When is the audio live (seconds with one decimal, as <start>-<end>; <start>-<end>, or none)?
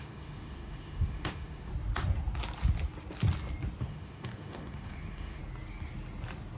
1.7-3.8; 5.4-6.6